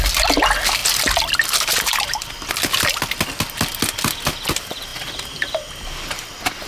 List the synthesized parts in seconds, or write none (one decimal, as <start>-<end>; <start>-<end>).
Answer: none